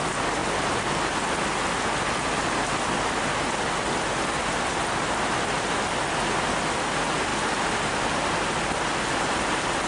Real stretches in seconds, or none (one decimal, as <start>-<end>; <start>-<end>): 0.0-9.9